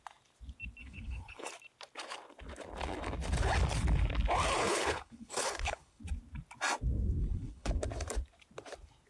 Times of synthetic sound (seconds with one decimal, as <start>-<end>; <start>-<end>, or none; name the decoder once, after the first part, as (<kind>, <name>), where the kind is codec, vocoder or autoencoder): 0.8-1.5 (codec, HILCodec); 4.6-6.0; 7.2-7.7